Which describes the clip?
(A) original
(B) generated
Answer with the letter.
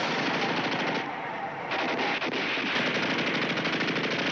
A